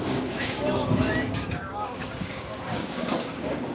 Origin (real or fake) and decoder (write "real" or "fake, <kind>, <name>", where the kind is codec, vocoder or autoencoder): fake, codec, DAC